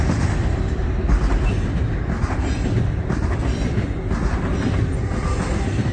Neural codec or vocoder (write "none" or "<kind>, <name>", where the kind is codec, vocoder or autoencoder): none